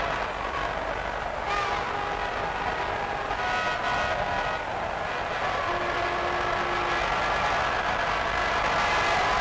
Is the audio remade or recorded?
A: recorded